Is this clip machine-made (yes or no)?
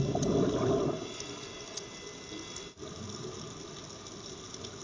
no